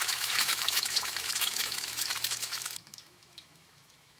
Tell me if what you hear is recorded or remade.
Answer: remade